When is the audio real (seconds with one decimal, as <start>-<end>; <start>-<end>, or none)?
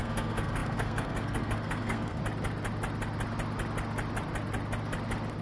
2.2-5.4